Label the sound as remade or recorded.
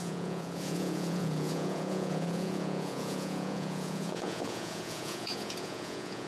remade